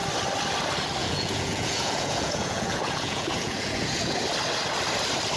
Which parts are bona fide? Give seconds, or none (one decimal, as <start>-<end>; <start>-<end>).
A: 0.0-1.0; 4.2-5.4